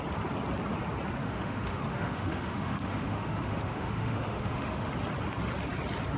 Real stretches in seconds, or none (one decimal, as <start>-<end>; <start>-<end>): 0.0-1.2; 4.9-6.2